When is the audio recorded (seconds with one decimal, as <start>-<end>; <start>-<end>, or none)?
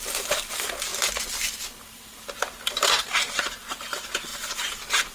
0.9-1.8